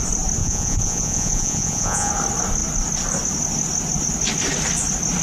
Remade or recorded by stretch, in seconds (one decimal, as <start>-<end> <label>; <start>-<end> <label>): 0.0-0.4 recorded; 0.4-2.1 remade; 2.1-5.2 recorded

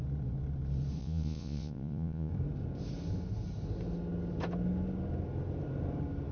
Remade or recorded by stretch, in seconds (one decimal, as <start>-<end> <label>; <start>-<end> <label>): 0.0-1.0 recorded; 1.0-2.3 remade; 2.3-6.3 recorded

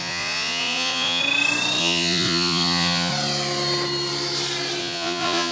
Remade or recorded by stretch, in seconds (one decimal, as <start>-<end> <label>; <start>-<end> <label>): 0.0-1.2 remade; 1.2-1.8 recorded; 1.8-3.1 remade; 3.1-4.8 recorded; 4.8-5.5 remade

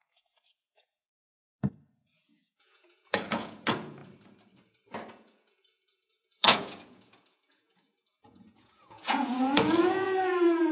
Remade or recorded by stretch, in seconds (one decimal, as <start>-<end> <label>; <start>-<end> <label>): 0.0-4.0 remade; 4.0-5.1 recorded; 5.1-10.7 remade